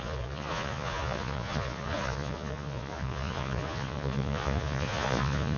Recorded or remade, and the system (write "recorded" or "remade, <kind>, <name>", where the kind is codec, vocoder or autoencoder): remade, vocoder, Vocos